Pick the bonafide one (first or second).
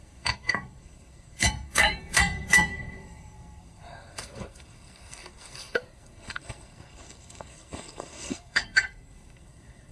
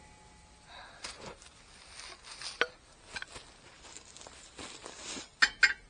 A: second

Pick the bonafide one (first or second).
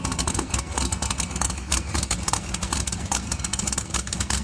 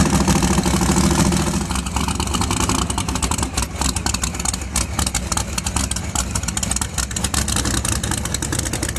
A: second